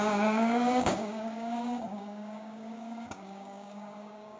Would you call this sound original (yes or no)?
no